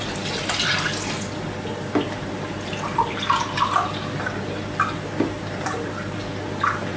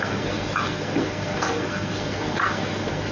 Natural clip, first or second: first